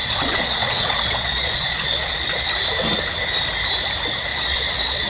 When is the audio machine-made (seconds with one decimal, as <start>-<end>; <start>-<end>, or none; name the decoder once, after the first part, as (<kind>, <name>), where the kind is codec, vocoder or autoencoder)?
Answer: 0.0-2.5 (vocoder, Vocos); 4.3-5.1